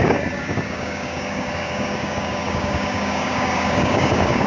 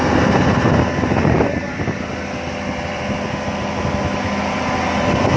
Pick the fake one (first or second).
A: first